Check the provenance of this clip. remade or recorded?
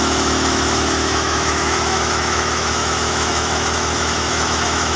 remade